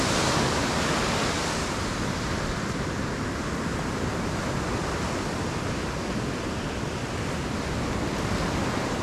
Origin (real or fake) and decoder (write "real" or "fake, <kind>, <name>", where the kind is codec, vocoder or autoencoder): real